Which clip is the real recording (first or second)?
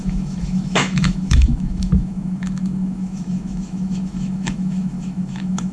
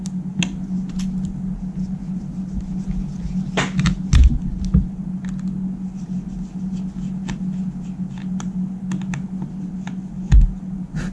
second